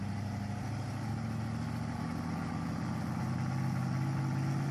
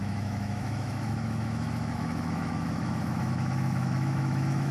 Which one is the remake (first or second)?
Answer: second